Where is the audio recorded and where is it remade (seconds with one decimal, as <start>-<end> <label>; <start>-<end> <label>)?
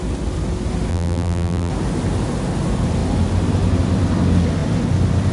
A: 0.0-0.9 recorded; 0.9-1.7 remade; 1.7-5.3 recorded